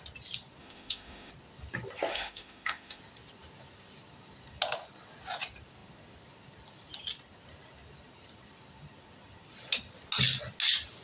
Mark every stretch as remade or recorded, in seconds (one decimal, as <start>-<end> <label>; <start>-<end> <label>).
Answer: 0.0-0.6 recorded; 0.6-1.3 remade; 1.3-2.1 recorded; 2.1-3.0 remade; 3.0-11.0 recorded